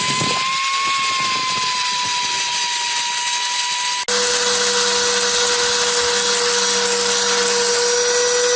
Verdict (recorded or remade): recorded